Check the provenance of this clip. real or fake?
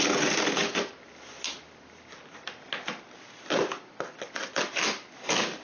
real